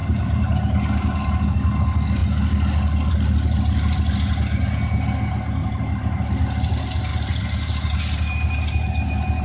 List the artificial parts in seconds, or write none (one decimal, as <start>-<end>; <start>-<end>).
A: 0.0-1.3; 5.6-6.3; 7.1-8.0